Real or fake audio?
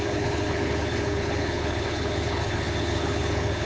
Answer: fake